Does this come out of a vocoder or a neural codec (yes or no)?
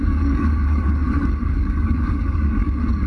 yes